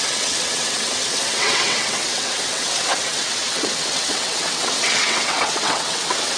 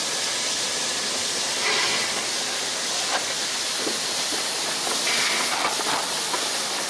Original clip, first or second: second